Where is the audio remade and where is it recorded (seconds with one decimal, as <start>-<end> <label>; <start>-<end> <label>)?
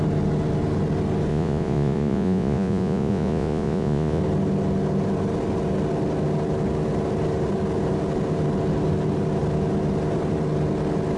0.0-1.3 recorded; 1.3-4.2 remade; 4.2-11.2 recorded